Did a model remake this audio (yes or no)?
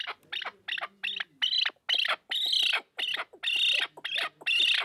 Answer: no